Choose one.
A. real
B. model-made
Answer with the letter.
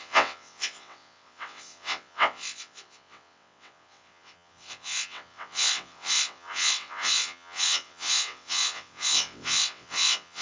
B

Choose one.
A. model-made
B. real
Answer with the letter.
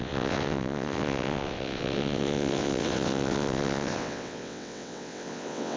A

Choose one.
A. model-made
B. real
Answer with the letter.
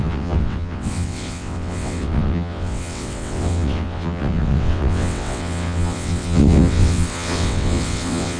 A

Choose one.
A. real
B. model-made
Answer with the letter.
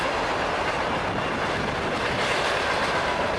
A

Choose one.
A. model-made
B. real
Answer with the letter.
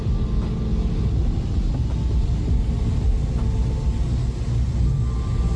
B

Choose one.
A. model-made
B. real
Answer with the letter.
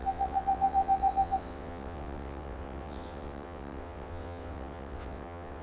A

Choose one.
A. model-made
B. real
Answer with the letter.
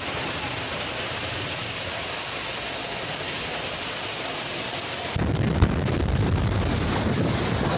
B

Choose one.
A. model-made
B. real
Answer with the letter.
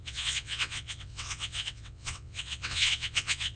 A